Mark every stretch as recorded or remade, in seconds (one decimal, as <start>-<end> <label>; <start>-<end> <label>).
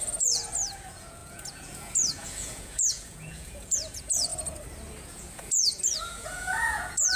0.0-4.3 remade; 4.3-5.1 recorded; 5.1-7.2 remade